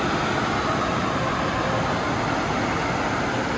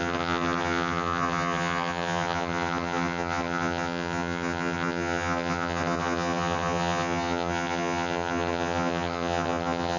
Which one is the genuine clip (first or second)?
first